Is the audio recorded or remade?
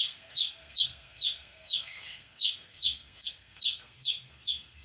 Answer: remade